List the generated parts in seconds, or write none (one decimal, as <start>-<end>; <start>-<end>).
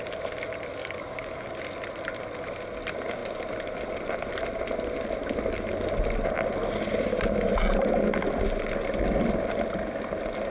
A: 0.8-1.5